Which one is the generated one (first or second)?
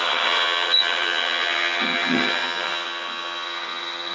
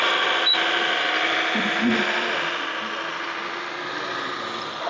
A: first